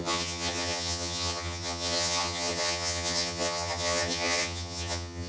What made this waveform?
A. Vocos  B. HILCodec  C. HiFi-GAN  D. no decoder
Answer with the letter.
C